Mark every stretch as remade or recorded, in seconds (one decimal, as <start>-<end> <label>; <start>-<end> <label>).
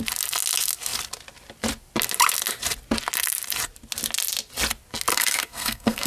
0.0-5.1 recorded; 5.1-6.1 remade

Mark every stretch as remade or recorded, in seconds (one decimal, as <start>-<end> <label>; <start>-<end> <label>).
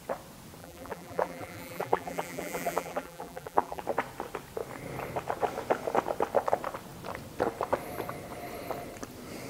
0.0-0.6 recorded; 0.6-3.8 remade; 3.8-9.5 recorded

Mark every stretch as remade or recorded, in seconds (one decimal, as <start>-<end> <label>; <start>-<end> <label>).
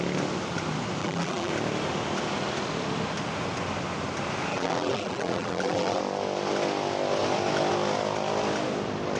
0.0-1.0 recorded; 1.0-1.5 remade; 1.5-4.5 recorded; 4.5-6.0 remade; 6.0-9.2 recorded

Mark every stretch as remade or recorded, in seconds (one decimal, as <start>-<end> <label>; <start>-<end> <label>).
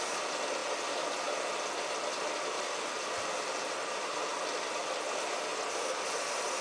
0.0-0.6 recorded; 0.6-2.2 remade; 2.2-4.3 recorded; 4.3-5.1 remade; 5.1-6.6 recorded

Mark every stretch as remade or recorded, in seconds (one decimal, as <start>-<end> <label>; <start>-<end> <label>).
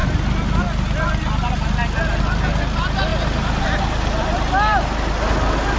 0.0-5.8 recorded